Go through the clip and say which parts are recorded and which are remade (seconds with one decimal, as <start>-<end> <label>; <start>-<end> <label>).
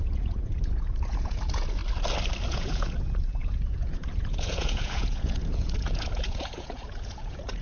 0.0-1.8 remade; 1.8-2.5 recorded; 2.5-7.6 remade